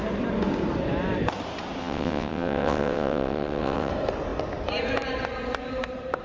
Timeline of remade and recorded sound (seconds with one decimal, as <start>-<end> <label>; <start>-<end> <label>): 0.0-1.8 recorded; 1.8-3.9 remade; 3.9-6.2 recorded